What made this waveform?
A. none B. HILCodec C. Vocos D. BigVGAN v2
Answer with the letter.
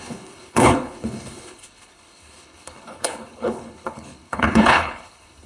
B